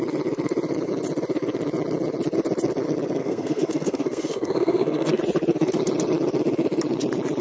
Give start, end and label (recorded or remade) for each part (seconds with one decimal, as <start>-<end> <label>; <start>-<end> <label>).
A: 0.0-3.2 recorded; 3.2-5.2 remade; 5.2-7.4 recorded